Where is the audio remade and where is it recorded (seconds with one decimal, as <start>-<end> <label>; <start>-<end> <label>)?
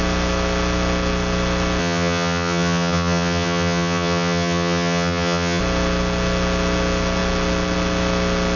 0.0-1.8 recorded; 1.8-5.6 remade; 5.6-8.6 recorded